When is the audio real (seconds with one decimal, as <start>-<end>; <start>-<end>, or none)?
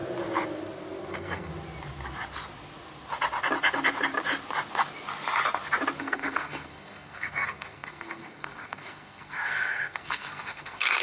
0.0-1.1; 1.5-6.0